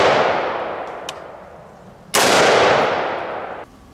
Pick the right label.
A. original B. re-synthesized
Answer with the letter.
A